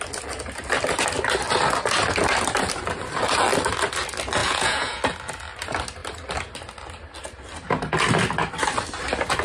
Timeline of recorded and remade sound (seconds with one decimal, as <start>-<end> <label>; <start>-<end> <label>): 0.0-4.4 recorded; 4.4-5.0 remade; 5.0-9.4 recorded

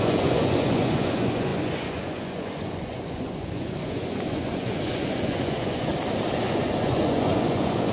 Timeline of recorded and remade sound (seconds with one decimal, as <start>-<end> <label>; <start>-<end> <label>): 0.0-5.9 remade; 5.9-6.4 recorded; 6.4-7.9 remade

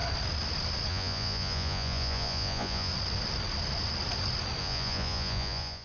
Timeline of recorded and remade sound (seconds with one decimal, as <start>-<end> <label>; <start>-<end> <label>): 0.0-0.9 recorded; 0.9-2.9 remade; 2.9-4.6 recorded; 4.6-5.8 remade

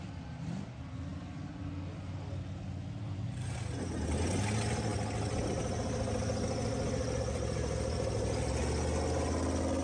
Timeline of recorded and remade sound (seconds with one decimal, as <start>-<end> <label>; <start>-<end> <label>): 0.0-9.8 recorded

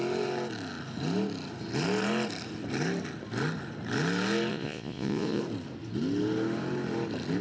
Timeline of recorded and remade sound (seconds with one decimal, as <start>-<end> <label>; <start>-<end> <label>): 0.0-4.5 recorded; 4.5-5.4 remade; 5.4-7.4 recorded